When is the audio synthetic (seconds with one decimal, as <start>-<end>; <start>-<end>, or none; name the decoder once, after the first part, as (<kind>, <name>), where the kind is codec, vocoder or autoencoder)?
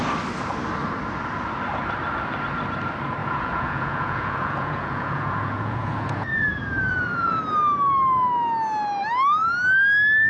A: 3.2-7.4 (vocoder, Vocos)